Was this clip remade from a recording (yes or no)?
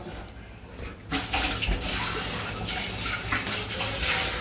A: no